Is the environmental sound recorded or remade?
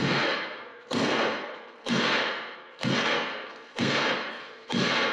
remade